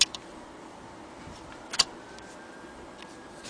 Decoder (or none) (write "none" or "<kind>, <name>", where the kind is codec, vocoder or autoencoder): none